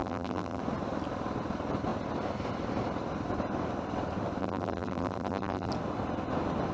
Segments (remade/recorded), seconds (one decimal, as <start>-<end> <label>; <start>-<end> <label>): 0.0-0.6 remade; 0.6-4.4 recorded; 4.4-5.7 remade; 5.7-6.7 recorded